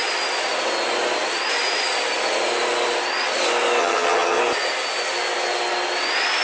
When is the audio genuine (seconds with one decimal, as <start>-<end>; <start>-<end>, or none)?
0.0-3.8; 4.4-6.4